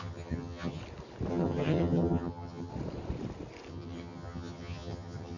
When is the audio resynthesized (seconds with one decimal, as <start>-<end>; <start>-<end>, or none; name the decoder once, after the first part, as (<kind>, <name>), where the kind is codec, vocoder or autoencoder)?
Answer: 0.0-0.8 (vocoder, HiFi-GAN); 1.3-2.7; 3.7-5.4